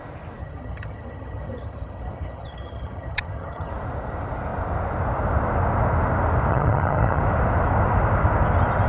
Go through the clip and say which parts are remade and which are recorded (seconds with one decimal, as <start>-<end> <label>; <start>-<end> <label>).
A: 0.0-0.4 recorded; 0.4-3.7 remade; 3.7-6.5 recorded; 6.5-7.2 remade; 7.2-8.9 recorded